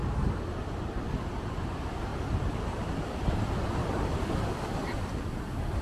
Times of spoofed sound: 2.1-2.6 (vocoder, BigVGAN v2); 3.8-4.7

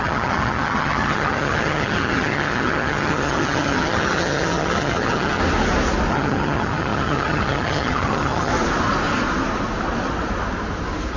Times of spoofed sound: 0.0-5.4 (vocoder, HiFi-GAN); 6.1-8.5

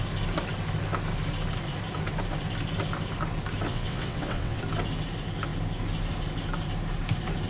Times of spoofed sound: 3.7-4.6 (vocoder, WaveNeXt)

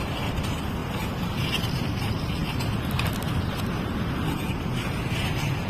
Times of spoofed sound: none